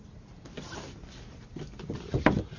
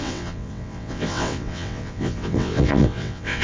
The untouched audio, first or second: first